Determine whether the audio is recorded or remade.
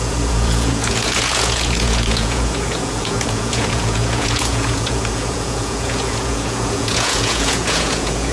remade